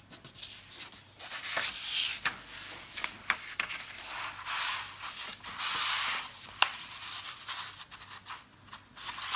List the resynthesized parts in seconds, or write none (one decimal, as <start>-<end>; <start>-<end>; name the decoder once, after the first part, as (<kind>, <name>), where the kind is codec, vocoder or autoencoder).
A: 2.1-4.8 (codec, DAC)